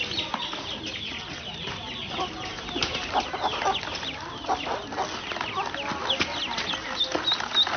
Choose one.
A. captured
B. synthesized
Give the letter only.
A